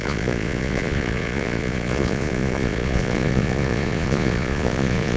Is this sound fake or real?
fake